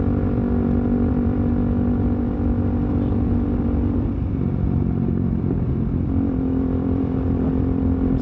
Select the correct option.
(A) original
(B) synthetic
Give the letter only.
B